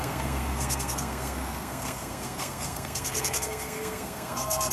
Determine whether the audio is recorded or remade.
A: remade